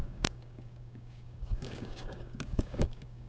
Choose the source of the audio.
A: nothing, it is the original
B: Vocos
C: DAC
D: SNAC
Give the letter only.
C